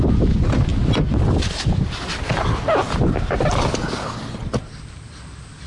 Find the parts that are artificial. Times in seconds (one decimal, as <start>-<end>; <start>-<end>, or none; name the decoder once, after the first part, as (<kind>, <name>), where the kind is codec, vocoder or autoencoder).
none